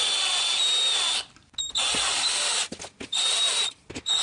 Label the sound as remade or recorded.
recorded